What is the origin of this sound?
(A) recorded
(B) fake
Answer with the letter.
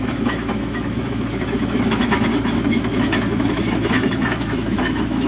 B